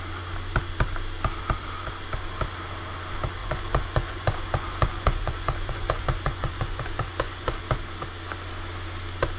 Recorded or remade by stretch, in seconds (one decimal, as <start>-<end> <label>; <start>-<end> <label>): 0.0-3.4 recorded; 3.4-7.6 remade; 7.6-9.4 recorded